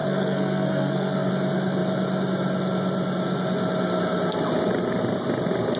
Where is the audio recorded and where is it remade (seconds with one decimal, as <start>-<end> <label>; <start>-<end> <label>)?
0.0-1.3 remade; 1.3-5.8 recorded